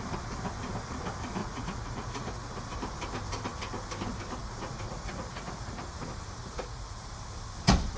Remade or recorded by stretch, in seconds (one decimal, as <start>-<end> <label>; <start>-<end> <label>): 0.0-1.4 recorded; 1.4-2.6 remade; 2.6-4.4 recorded; 4.4-5.8 remade; 5.8-6.4 recorded; 6.4-7.1 remade; 7.1-8.0 recorded